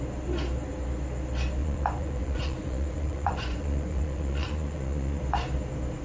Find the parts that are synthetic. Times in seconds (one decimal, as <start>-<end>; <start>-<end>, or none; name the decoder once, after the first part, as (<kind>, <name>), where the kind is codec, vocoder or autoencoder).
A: 1.6-5.2 (vocoder, Vocos)